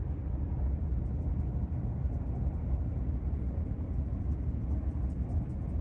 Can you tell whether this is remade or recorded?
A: recorded